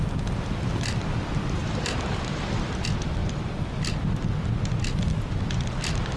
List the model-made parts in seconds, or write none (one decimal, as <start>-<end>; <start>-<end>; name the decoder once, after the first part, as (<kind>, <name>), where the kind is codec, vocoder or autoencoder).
1.6-2.5 (vocoder, BigVGAN v2)